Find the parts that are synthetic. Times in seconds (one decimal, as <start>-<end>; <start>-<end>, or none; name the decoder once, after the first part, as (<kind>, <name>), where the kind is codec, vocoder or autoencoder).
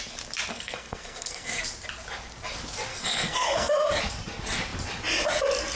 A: 0.5-1.6 (codec, SNAC); 2.9-4.0